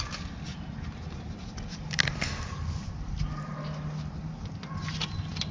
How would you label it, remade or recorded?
recorded